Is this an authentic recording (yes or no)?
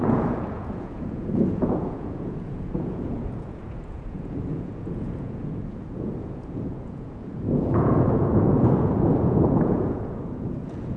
no